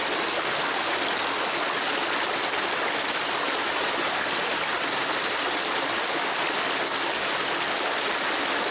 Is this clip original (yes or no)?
yes